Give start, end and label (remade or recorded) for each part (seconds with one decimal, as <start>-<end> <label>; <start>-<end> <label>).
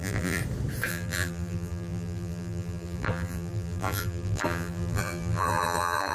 0.0-0.4 remade; 0.4-0.9 recorded; 0.9-6.1 remade